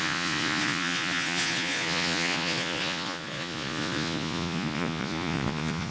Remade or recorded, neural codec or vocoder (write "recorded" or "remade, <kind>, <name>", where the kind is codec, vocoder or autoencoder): remade, vocoder, Vocos